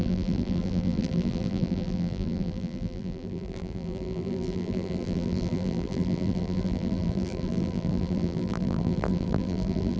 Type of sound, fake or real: fake